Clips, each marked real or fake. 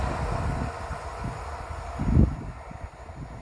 real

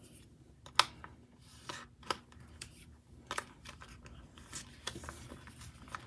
real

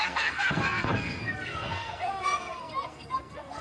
fake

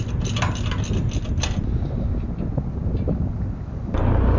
real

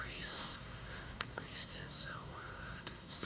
fake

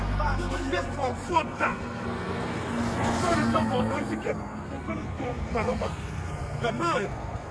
fake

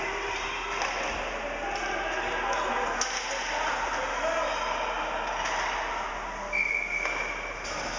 real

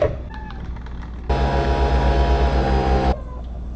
real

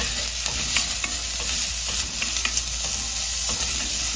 real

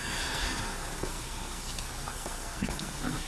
fake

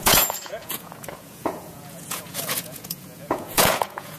fake